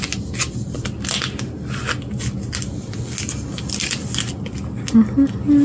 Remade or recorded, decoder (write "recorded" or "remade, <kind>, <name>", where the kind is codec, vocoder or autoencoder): recorded